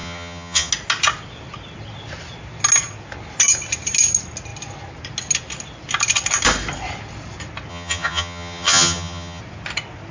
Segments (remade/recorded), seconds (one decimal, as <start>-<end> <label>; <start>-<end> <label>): 0.0-0.7 remade; 0.7-7.7 recorded; 7.7-9.4 remade; 9.4-10.1 recorded